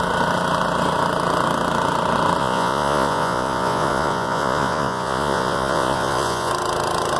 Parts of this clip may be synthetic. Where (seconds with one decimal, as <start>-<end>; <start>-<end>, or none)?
2.4-6.5